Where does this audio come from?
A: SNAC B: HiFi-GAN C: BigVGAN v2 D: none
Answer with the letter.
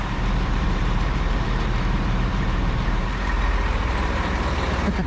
C